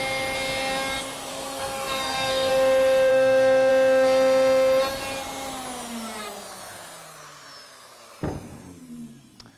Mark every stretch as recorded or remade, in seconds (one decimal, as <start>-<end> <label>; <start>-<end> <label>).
0.0-1.3 recorded; 1.3-2.5 remade; 2.5-3.1 recorded; 3.1-3.7 remade; 3.7-9.6 recorded